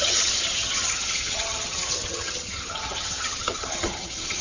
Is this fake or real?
fake